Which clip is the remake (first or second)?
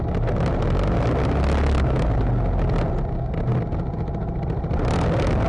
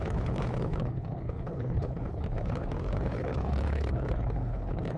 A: second